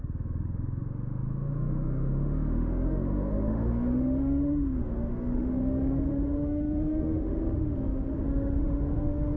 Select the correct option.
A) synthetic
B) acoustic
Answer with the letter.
A